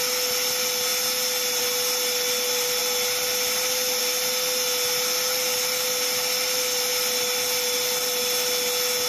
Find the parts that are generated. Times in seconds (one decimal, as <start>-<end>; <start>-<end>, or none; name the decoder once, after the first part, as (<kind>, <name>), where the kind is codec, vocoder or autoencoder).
none